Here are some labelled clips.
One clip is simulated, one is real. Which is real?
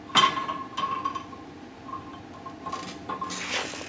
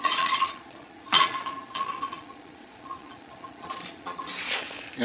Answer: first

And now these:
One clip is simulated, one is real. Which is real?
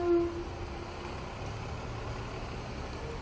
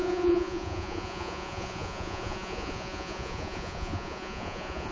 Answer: first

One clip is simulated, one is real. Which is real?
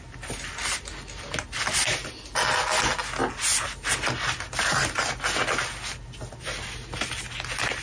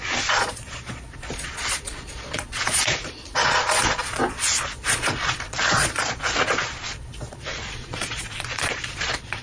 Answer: first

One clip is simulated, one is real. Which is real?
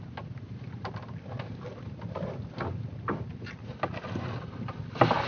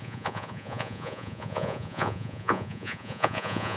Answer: first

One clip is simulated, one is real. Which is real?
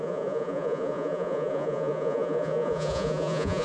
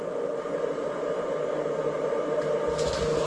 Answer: second